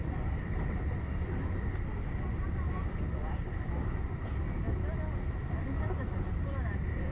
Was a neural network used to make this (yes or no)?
no